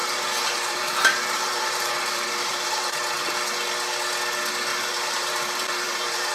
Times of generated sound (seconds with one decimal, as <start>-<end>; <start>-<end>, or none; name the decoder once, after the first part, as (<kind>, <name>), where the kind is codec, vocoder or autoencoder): 0.0-3.3 (vocoder, BigVGAN v2); 4.7-6.3